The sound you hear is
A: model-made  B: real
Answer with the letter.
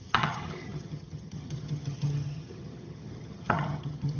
A